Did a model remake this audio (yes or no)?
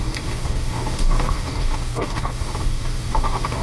yes